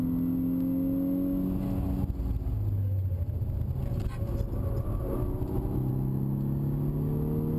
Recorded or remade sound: recorded